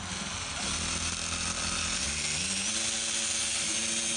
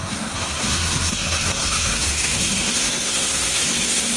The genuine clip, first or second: first